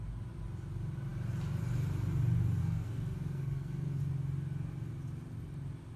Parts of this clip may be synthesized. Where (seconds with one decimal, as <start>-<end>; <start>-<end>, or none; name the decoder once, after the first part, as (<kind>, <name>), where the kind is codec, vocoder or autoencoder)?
2.6-4.0 (codec, SNAC)